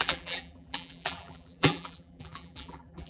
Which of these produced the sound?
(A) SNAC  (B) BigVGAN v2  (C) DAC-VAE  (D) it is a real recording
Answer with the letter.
B